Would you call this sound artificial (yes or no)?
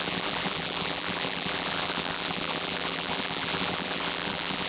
yes